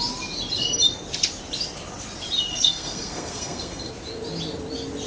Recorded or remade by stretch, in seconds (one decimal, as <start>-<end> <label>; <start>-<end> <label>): 0.0-2.5 recorded; 2.5-3.9 remade; 3.9-5.1 recorded